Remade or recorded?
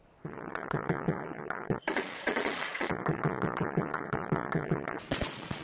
remade